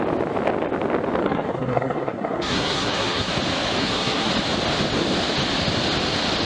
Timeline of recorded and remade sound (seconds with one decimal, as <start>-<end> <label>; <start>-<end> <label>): 0.0-1.2 recorded; 1.2-3.3 remade; 3.3-3.8 recorded; 3.8-4.3 remade; 4.3-6.4 recorded